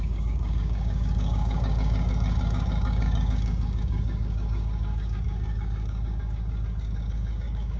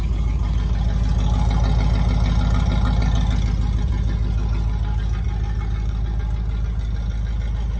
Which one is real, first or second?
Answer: second